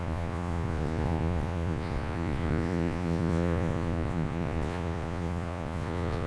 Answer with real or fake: fake